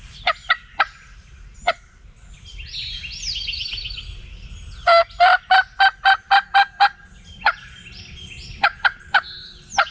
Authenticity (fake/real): real